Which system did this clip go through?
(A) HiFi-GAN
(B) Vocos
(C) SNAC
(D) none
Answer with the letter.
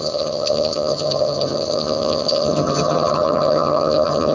A